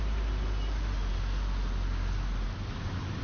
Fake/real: real